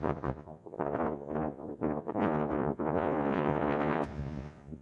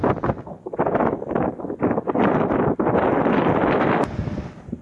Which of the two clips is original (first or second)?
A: second